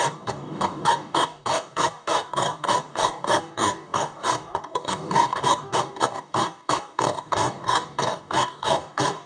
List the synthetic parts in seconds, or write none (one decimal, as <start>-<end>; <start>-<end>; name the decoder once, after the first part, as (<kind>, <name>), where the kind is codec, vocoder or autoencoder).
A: 0.0-9.3 (codec, DAC)